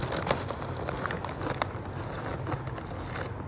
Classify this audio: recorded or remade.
recorded